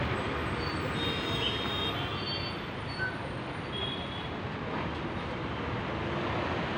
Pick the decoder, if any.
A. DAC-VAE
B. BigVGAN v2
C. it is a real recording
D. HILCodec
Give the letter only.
C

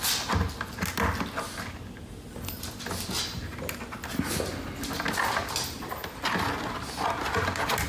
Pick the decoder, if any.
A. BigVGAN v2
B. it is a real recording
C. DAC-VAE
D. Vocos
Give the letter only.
B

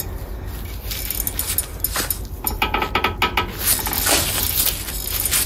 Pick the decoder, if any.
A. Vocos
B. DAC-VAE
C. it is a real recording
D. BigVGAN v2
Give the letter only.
C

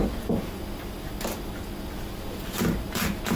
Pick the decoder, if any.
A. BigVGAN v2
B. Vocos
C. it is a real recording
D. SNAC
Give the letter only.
C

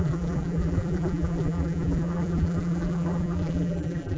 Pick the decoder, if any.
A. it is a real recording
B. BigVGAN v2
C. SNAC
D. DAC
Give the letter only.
B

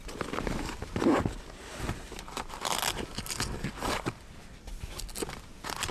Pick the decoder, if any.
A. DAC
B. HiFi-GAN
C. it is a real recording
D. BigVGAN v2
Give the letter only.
C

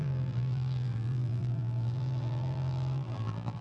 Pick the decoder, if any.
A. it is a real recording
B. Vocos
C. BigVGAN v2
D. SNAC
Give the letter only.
C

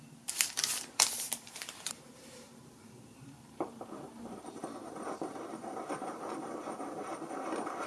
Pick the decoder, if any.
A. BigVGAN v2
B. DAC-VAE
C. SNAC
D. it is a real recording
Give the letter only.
A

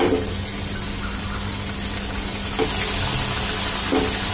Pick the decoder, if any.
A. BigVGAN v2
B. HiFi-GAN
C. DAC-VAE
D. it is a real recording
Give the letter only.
D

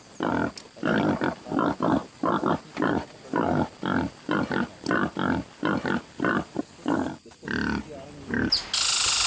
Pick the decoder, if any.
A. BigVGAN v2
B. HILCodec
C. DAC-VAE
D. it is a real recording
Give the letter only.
D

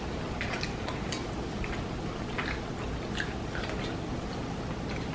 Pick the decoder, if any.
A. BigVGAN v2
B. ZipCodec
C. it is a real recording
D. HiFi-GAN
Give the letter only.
C